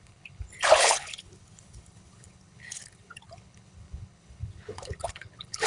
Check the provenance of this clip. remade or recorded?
remade